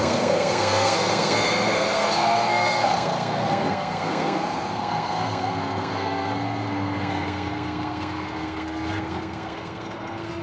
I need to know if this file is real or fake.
fake